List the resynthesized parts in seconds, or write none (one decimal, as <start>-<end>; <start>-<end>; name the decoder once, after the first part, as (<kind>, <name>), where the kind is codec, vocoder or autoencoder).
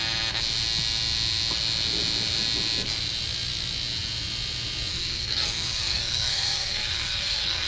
4.9-7.7 (codec, SNAC)